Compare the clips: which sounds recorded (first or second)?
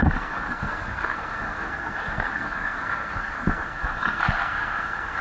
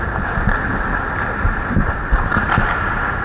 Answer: second